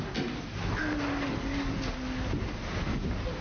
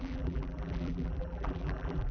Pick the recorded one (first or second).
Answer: first